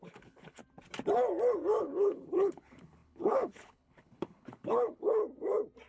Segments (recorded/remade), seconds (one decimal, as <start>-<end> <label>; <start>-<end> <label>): 0.0-0.6 remade; 0.6-1.8 recorded; 1.8-5.2 remade; 5.2-5.9 recorded